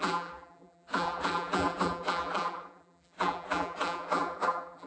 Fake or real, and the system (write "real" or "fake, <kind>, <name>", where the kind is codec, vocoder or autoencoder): fake, vocoder, BigVGAN v2